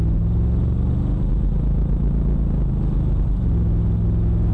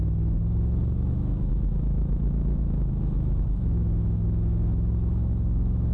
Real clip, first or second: first